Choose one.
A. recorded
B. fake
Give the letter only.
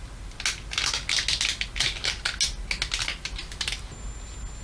A